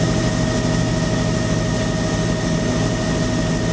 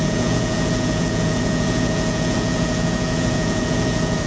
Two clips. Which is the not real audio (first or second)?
second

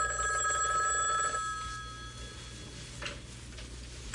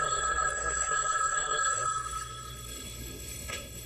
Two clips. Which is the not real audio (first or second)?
second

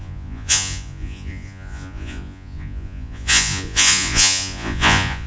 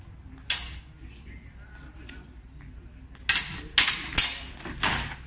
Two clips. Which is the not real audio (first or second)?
first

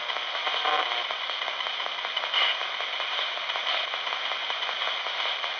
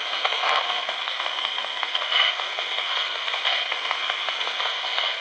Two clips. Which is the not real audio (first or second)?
second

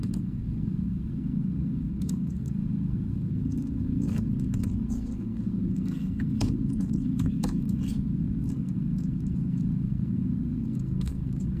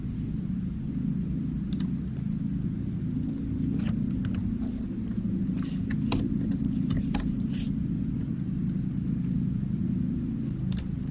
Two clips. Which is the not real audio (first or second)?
first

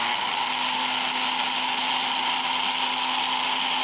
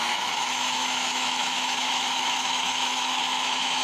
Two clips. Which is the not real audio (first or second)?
second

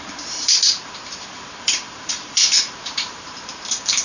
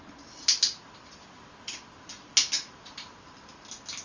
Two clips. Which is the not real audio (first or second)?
first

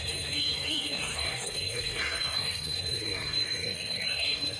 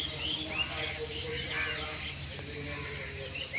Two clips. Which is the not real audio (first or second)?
first